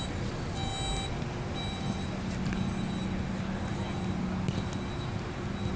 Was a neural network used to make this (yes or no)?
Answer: no